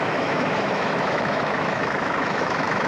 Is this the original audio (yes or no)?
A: no